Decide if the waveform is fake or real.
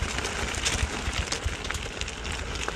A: real